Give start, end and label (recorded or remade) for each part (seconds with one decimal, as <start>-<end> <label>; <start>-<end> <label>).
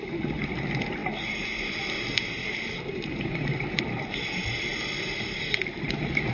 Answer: 0.0-6.3 recorded